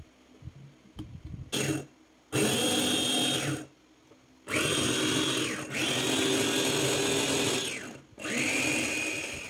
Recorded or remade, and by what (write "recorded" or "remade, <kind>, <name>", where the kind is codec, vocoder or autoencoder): recorded